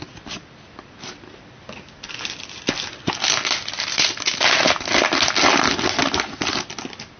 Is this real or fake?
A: real